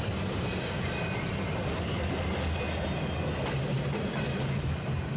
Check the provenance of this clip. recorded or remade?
recorded